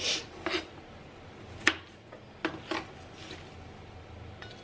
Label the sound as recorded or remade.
recorded